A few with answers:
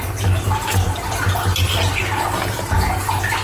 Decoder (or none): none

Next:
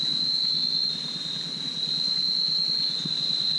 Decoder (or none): none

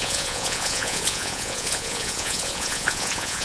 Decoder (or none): vocoder, Vocos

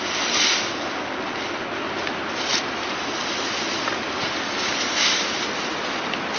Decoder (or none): none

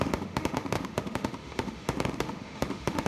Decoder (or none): autoencoder, DAC-VAE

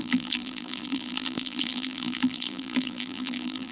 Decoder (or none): vocoder, BigVGAN v2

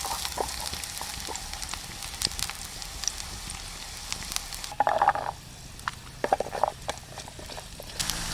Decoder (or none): none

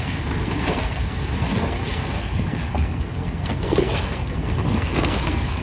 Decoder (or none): codec, SNAC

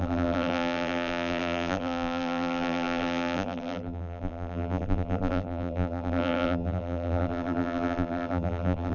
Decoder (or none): vocoder, BigVGAN v2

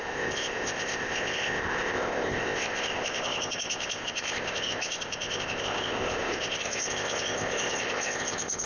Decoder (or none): codec, ZipCodec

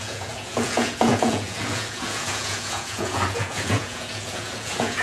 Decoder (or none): vocoder, Vocos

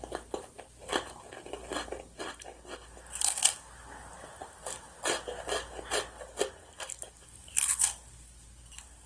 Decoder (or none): none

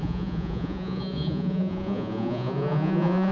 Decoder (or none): vocoder, Vocos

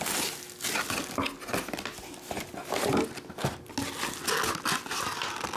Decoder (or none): none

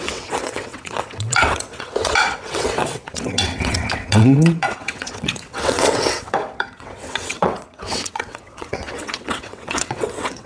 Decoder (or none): vocoder, WaveNeXt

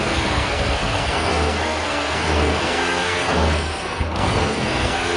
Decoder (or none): codec, SNAC